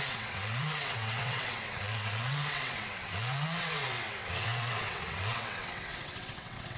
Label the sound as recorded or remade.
remade